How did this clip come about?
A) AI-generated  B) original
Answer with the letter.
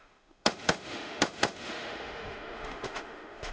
A